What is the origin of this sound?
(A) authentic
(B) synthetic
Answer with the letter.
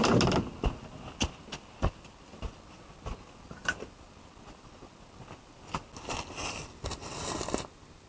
A